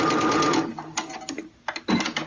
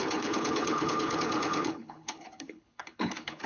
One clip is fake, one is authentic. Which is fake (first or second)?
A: second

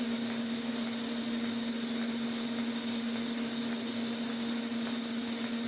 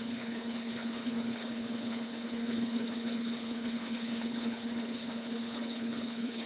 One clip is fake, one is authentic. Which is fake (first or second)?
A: second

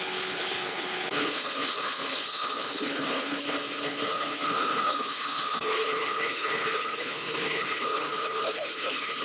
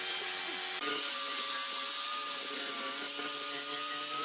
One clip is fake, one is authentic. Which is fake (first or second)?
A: first